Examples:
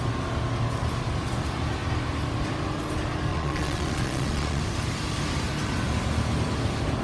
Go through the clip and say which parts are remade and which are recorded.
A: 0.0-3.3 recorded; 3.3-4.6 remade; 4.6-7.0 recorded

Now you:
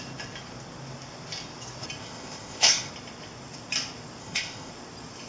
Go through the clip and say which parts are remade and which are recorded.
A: 0.0-2.0 recorded; 2.0-2.9 remade; 2.9-4.2 recorded; 4.2-4.7 remade; 4.7-5.3 recorded

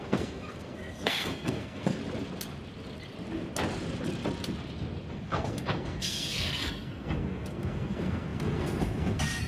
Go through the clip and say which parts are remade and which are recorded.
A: 0.0-2.0 remade; 2.0-5.1 recorded; 5.1-9.5 remade

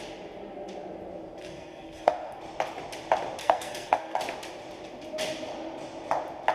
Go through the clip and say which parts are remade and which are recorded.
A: 0.0-1.4 recorded; 1.4-2.4 remade; 2.4-3.4 recorded; 3.4-4.2 remade; 4.2-6.5 recorded

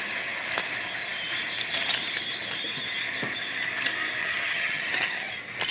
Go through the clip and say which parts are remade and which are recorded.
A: 0.0-4.2 recorded; 4.2-5.3 remade; 5.3-5.7 recorded

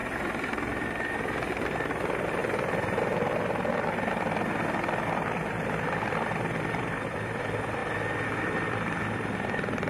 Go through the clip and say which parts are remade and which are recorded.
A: 0.0-7.8 remade; 7.8-8.7 recorded; 8.7-9.9 remade

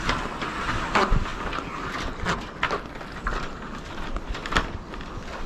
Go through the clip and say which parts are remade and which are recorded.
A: 0.0-5.5 recorded